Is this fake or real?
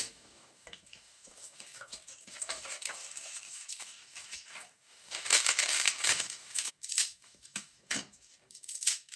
fake